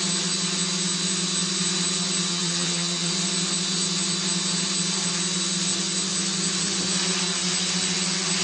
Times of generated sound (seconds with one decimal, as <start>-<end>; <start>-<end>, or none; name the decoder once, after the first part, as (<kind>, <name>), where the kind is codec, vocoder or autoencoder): 2.3-3.1 (vocoder, HiFi-GAN)